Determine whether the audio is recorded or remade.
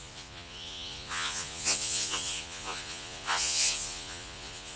remade